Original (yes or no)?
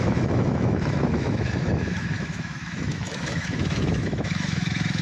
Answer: no